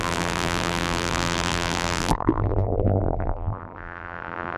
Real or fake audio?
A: fake